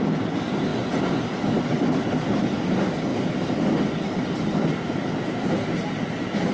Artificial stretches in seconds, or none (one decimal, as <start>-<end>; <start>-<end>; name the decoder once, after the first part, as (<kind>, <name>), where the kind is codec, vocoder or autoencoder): 0.7-1.2 (vocoder, Vocos)